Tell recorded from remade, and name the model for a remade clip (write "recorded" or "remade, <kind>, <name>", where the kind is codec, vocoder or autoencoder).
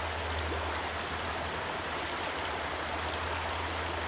recorded